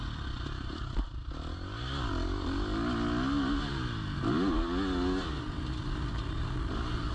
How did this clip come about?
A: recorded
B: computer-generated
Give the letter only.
A